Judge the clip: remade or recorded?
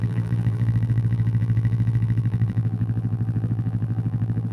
remade